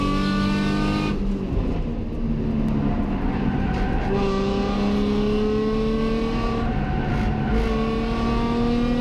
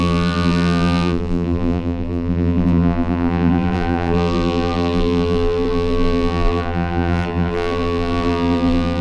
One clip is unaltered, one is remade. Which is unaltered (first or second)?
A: first